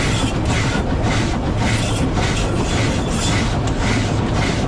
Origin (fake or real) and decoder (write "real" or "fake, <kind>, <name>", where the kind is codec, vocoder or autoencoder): real